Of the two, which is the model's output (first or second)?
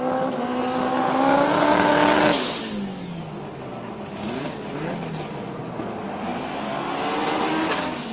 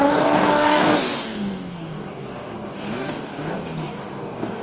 second